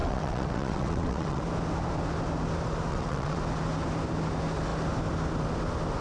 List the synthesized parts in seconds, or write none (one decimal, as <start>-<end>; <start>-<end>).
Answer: 0.0-1.4; 2.9-3.4